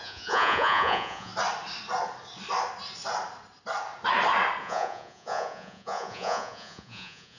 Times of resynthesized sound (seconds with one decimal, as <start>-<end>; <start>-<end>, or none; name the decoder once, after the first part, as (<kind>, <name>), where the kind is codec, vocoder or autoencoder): 0.0-1.3 (vocoder, Vocos); 4.6-7.4